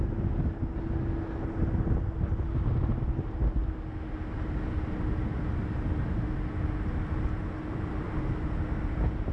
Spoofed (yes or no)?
no